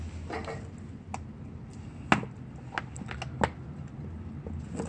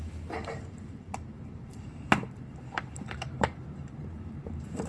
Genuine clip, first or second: first